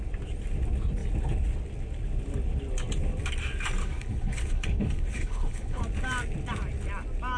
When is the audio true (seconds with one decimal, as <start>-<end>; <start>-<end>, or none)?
0.0-3.8; 5.8-7.4